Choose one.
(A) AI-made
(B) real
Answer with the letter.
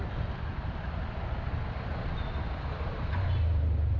B